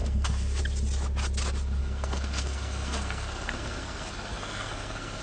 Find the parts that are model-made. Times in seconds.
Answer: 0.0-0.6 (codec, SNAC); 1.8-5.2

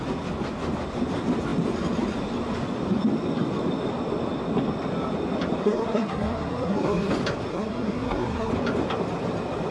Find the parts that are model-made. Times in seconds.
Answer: 5.6-7.1 (codec, SNAC); 7.5-8.5

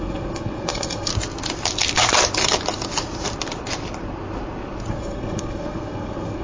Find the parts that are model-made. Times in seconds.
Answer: 0.0-1.1 (codec, SNAC); 4.9-6.4

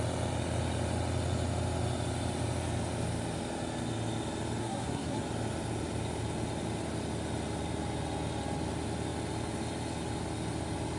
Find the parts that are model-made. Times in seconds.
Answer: 4.6-5.2 (codec, SNAC)

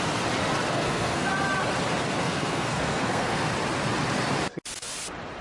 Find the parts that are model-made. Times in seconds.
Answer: 0.7-1.3 (codec, SNAC); 2.2-3.5

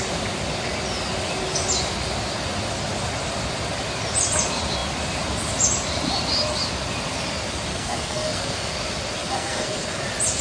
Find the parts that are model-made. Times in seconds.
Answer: 7.7-8.7 (codec, SNAC); 9.2-10.0

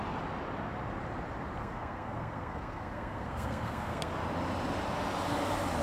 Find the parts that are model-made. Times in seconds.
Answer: 1.6-4.1 (codec, SNAC)

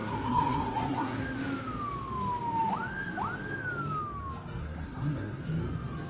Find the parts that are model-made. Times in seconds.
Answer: 0.0-1.2 (codec, SNAC); 4.6-5.4